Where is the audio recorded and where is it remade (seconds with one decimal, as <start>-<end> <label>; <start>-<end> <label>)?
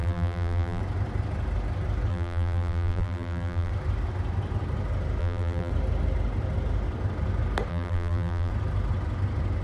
0.0-0.8 remade; 0.8-2.1 recorded; 2.1-3.7 remade; 3.7-5.2 recorded; 5.2-5.7 remade; 5.7-7.7 recorded; 7.7-8.5 remade; 8.5-9.6 recorded